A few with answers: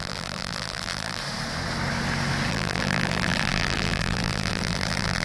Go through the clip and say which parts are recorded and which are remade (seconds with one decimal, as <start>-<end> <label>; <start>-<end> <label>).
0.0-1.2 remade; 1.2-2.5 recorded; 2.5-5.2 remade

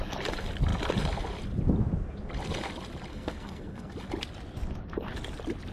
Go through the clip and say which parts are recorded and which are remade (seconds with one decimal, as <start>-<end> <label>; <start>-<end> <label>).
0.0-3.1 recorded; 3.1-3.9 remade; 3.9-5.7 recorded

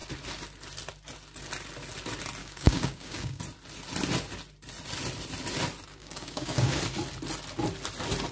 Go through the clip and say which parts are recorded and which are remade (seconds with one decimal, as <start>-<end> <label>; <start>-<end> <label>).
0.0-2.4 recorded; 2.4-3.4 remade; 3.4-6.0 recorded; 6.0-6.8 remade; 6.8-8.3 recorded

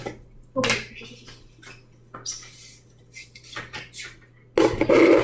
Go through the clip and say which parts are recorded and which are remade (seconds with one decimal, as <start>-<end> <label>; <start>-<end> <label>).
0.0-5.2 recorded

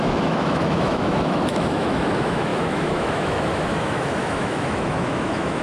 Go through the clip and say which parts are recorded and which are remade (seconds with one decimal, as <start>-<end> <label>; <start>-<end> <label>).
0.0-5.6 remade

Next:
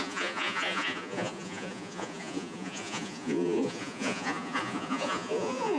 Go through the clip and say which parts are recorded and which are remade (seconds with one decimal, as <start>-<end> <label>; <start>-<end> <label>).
0.0-5.8 remade

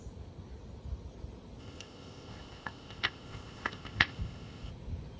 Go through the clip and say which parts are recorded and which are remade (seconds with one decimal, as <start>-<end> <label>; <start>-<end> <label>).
0.0-1.6 recorded; 1.6-4.7 remade; 4.7-5.2 recorded